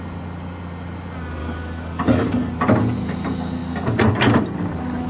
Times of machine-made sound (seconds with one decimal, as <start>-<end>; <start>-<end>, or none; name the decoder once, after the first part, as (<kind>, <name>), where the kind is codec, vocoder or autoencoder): 1.4-2.5 (codec, DAC)